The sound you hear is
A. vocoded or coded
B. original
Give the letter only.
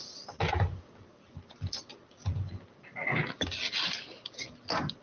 B